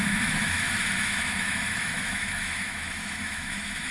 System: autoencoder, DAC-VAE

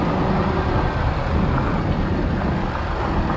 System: none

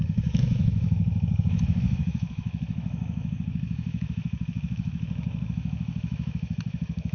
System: autoencoder, DAC-VAE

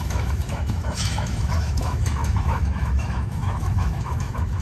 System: autoencoder, DAC-VAE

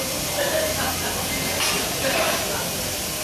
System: none